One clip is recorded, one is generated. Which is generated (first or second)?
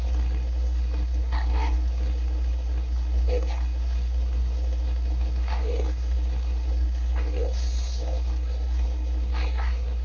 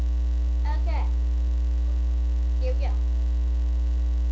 first